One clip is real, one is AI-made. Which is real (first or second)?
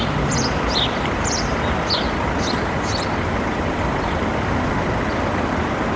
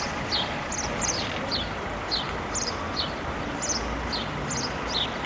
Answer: second